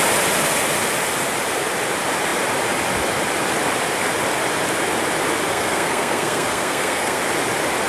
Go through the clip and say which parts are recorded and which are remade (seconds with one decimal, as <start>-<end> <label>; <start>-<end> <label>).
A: 0.0-5.5 recorded; 5.5-7.2 remade; 7.2-7.9 recorded